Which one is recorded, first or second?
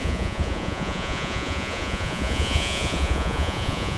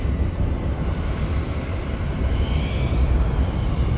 second